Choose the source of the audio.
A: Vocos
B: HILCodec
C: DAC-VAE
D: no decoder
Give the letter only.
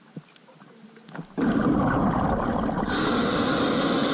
D